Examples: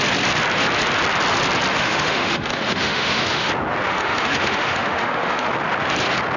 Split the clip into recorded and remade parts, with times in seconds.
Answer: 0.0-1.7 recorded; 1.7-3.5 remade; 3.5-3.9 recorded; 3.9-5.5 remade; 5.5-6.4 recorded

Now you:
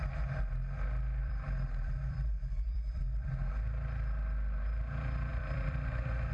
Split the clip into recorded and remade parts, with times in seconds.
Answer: 0.0-1.2 recorded; 1.2-3.3 remade; 3.3-5.3 recorded; 5.3-6.3 remade

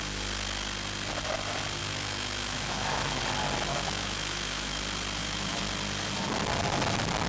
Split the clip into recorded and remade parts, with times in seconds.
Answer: 0.0-1.8 recorded; 1.8-3.2 remade; 3.2-3.7 recorded; 3.7-4.8 remade; 4.8-5.2 recorded; 5.2-5.7 remade; 5.7-7.3 recorded

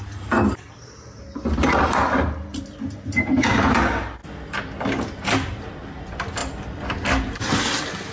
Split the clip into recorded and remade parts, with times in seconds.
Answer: 0.0-8.1 recorded

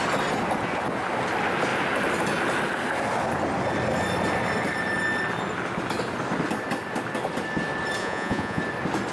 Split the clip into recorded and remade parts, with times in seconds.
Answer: 0.0-8.0 recorded; 8.0-8.6 remade; 8.6-9.1 recorded

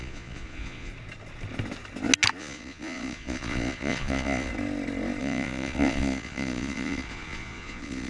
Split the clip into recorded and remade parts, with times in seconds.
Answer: 0.0-0.9 remade; 0.9-2.4 recorded; 2.4-4.5 remade; 4.5-5.2 recorded; 5.2-8.1 remade